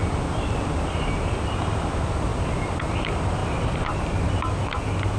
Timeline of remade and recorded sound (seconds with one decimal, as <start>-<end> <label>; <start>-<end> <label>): 0.0-3.4 recorded; 3.4-4.4 remade; 4.4-5.2 recorded